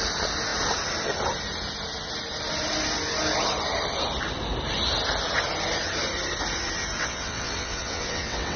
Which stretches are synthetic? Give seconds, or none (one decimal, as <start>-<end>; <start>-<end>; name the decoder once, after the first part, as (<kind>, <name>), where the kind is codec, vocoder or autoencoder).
7.0-8.6 (vocoder, WaveNeXt)